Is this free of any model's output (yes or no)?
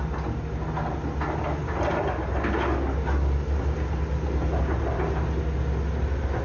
yes